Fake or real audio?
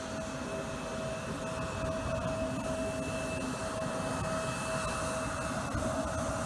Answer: real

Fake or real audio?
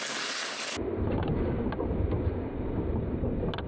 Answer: real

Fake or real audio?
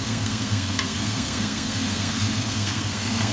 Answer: fake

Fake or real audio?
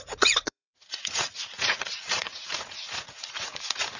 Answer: fake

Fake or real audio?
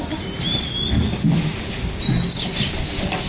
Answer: real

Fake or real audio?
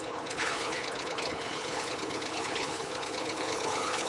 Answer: fake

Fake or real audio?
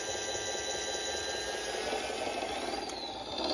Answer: real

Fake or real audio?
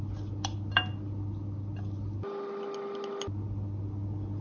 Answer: real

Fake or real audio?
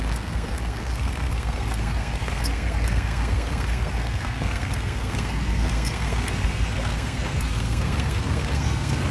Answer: fake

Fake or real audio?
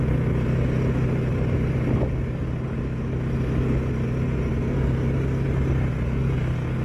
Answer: real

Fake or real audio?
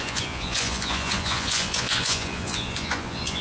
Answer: fake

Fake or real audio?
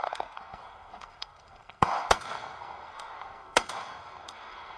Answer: fake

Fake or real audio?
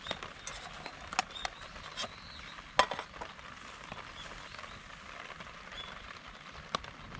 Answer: real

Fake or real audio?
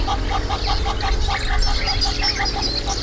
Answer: real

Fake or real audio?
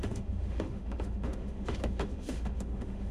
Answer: fake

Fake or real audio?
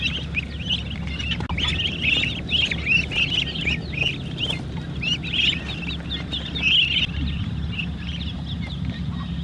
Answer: real